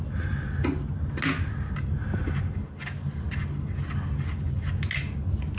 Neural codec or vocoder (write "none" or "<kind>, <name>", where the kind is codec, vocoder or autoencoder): none